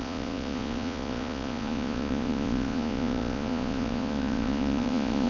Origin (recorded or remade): remade